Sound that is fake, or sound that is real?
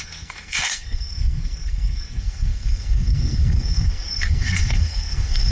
fake